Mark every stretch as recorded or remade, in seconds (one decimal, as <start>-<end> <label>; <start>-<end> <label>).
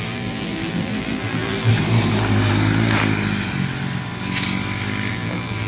0.0-1.7 remade; 1.7-5.1 recorded; 5.1-5.7 remade